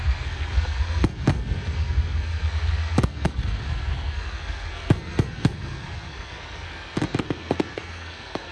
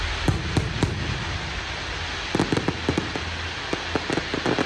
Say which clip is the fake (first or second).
first